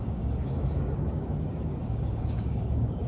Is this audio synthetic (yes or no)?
yes